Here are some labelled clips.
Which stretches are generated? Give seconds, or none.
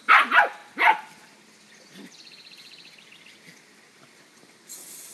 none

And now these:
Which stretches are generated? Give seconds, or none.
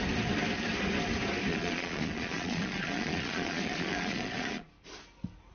1.5-4.7 (vocoder, Vocos)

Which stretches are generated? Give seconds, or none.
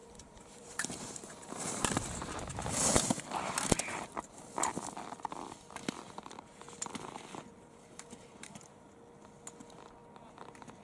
0.0-3.2 (vocoder, BigVGAN v2); 7.5-9.0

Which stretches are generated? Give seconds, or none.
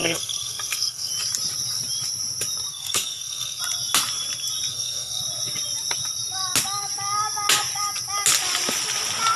0.0-1.1 (codec, SNAC); 2.7-3.6; 4.7-5.2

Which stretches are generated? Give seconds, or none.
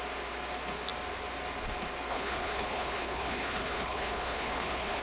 2.1-5.0 (codec, HILCodec)